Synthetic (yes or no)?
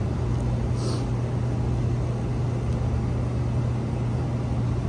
no